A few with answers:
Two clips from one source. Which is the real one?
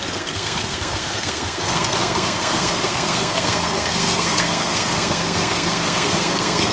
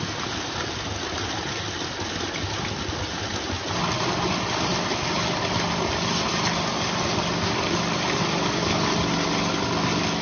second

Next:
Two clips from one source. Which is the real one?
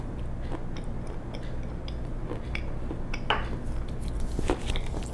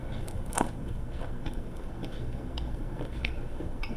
first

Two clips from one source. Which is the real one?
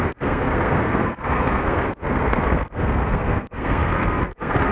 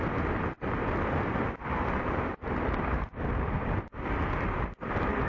second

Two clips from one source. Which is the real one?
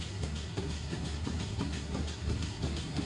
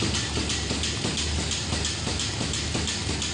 second